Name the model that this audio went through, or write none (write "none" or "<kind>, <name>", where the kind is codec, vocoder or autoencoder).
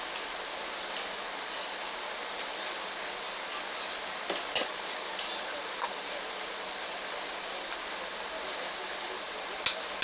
none